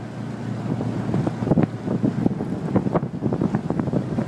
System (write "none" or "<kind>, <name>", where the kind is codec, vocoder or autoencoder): none